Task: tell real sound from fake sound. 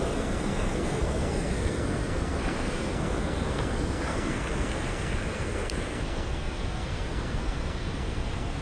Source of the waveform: fake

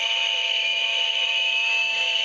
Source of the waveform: fake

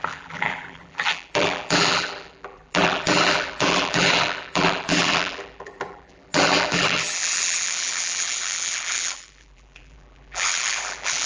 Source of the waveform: fake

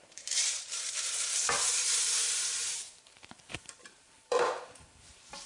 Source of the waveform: fake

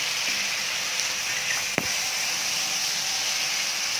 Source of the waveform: real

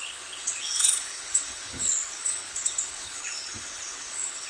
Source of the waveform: fake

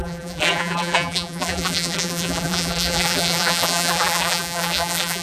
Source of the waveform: fake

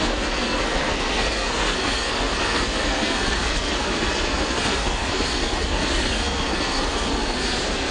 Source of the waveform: fake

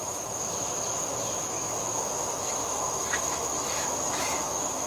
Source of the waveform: fake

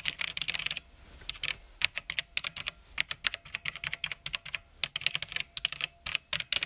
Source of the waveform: real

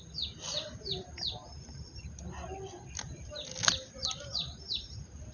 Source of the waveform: real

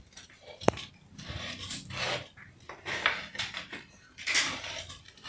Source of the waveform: real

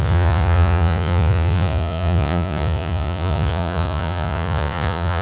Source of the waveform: fake